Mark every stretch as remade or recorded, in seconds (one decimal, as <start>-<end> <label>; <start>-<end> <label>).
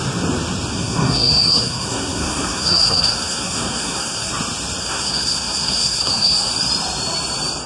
0.0-0.7 recorded; 0.7-4.3 remade; 4.3-4.8 recorded; 4.8-6.5 remade; 6.5-7.7 recorded